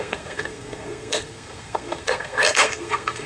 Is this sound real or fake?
fake